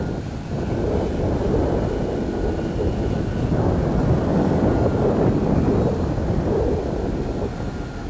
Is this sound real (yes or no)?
yes